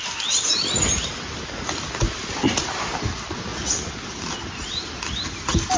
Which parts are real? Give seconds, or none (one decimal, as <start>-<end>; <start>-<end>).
0.0-5.8